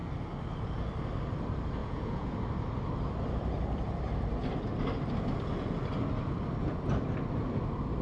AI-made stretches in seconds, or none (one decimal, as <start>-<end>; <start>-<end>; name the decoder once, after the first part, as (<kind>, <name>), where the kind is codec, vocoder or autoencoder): 1.8-2.3 (vocoder, Vocos)